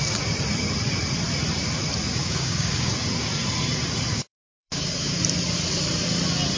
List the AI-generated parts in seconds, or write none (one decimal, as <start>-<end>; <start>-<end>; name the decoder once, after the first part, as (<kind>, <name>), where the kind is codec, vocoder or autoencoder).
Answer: 2.2-2.9 (codec, DAC); 4.1-5.2